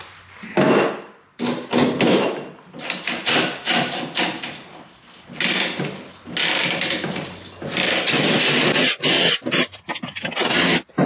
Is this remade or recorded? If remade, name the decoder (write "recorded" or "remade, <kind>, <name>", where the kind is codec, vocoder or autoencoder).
recorded